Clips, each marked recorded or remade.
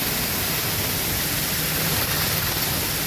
recorded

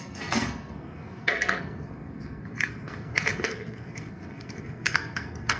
remade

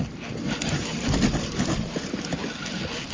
recorded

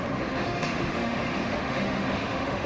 remade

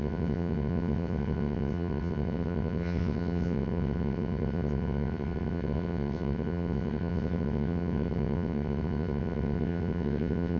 remade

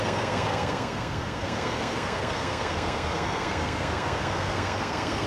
remade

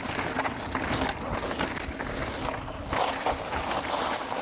recorded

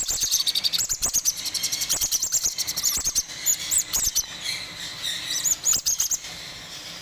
recorded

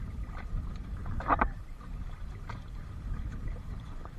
remade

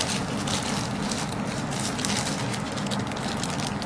recorded